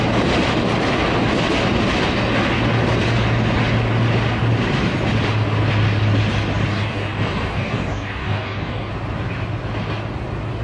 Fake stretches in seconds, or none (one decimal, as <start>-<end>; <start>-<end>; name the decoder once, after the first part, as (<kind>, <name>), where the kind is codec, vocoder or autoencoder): 6.7-8.9 (codec, DAC)